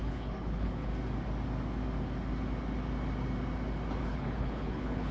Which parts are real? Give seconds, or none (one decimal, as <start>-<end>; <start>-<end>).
0.9-4.0